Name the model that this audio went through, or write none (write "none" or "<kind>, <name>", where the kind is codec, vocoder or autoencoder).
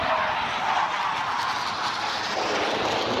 none